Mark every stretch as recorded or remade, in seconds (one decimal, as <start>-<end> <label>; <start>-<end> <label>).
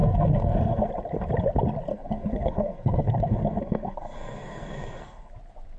0.0-0.9 remade; 0.9-1.9 recorded; 1.9-5.3 remade; 5.3-5.8 recorded